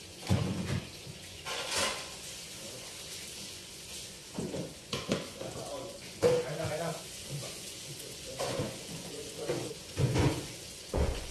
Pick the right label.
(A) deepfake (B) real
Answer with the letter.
A